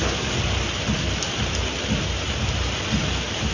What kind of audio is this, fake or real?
real